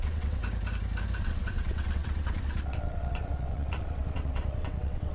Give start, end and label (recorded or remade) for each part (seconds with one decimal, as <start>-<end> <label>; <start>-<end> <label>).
0.0-0.4 remade; 0.4-1.2 recorded; 1.2-5.1 remade